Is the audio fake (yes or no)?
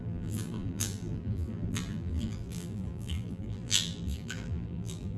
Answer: yes